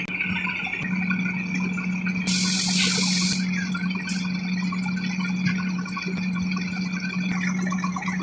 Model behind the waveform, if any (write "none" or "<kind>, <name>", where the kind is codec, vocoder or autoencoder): none